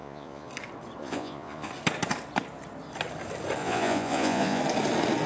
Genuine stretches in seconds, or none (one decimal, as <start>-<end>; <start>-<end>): 0.5-1.0; 1.7-3.6; 4.6-5.3